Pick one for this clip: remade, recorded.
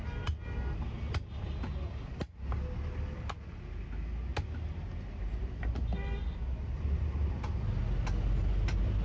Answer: recorded